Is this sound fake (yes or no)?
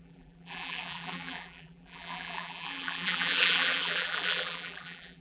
yes